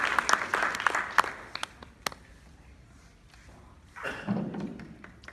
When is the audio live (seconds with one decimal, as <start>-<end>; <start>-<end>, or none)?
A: 0.0-5.3

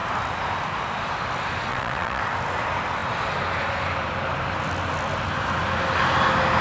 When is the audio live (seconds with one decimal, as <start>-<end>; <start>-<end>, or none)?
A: 0.0-1.7; 2.2-6.6